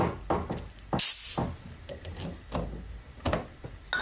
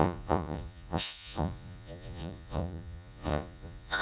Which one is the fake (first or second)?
second